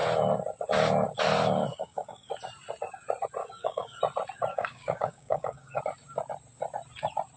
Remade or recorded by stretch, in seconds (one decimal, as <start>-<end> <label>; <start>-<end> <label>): 0.0-1.7 recorded; 1.7-2.3 remade; 2.3-3.4 recorded; 3.4-4.0 remade; 4.0-4.5 recorded; 4.5-5.8 remade; 5.8-7.4 recorded